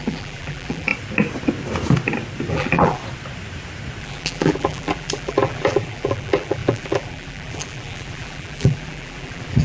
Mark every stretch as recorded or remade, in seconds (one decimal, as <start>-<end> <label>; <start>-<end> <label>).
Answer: 0.0-0.9 remade; 0.9-2.5 recorded; 2.5-3.0 remade; 3.0-4.0 recorded; 4.0-9.6 remade